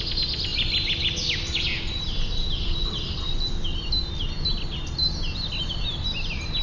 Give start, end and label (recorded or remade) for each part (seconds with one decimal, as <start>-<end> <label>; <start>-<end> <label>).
0.0-6.6 recorded